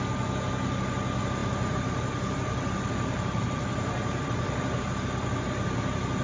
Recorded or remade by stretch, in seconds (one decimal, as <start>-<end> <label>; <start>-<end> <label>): 0.0-1.4 recorded; 1.4-4.8 remade; 4.8-6.2 recorded